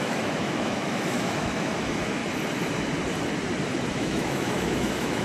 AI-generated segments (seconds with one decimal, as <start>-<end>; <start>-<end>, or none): 0.0-2.2; 3.9-5.2